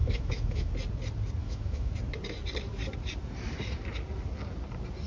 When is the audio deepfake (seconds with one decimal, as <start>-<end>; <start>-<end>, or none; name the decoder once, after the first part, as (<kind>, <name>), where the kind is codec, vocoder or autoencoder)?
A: 0.0-0.7 (autoencoder, DAC-VAE); 1.4-1.9